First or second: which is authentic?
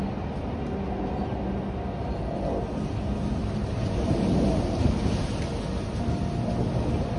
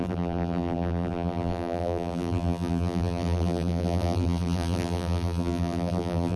first